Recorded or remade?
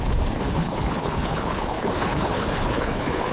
remade